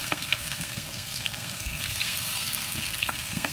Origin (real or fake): fake